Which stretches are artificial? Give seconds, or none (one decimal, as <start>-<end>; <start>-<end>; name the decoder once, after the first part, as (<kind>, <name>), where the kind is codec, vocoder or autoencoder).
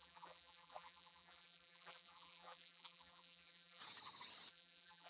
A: 0.0-3.8 (vocoder, BigVGAN v2); 4.5-5.1